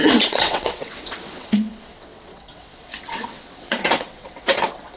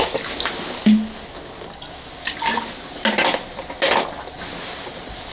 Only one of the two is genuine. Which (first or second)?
second